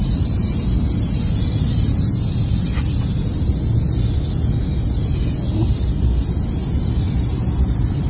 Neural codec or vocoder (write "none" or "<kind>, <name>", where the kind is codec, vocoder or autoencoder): none